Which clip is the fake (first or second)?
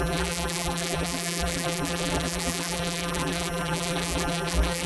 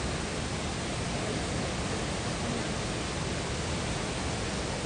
first